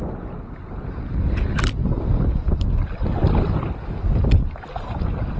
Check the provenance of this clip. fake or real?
real